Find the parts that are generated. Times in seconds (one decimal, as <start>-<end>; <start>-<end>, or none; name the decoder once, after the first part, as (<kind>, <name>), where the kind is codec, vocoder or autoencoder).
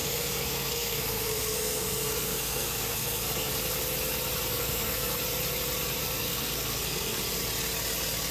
0.0-3.5 (codec, SNAC); 4.5-5.2; 6.0-7.2